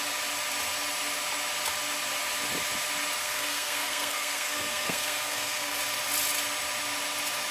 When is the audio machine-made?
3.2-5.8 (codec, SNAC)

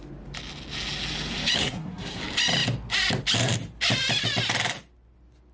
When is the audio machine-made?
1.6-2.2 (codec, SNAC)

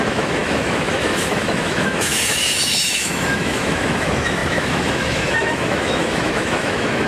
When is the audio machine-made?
0.0-7.1 (autoencoder, DAC-VAE)

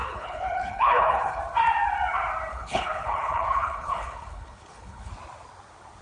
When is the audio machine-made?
0.0-1.4 (codec, HILCodec); 2.5-5.1

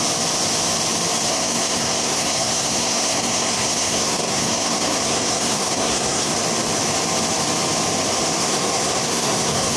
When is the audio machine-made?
1.3-6.3 (codec, SNAC); 8.4-9.8

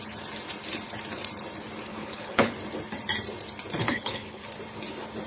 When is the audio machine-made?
1.9-2.5 (codec, HILCodec); 3.8-4.4

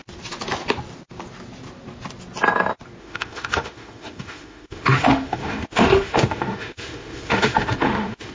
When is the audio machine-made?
3.0-8.3 (autoencoder, DAC-VAE)